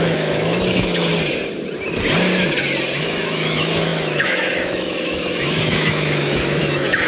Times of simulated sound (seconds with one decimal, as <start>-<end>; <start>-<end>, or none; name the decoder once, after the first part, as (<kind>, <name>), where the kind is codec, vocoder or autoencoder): 0.0-1.1 (autoencoder, DAC-VAE); 3.0-7.1